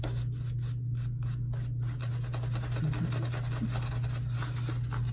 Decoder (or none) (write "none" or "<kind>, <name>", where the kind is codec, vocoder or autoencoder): none